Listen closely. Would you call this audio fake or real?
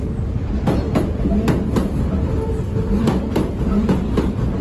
real